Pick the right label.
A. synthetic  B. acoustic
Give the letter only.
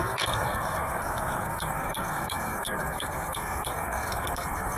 A